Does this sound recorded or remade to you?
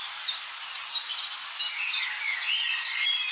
recorded